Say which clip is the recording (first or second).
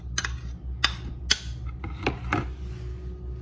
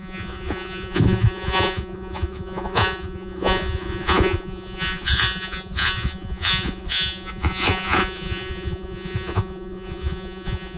first